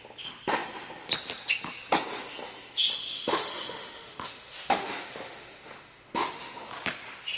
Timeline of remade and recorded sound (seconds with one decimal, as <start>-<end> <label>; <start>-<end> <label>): 0.0-3.1 recorded; 3.1-6.7 remade; 6.7-7.4 recorded